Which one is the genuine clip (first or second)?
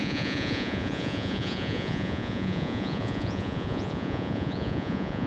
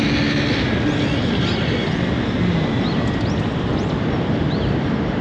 second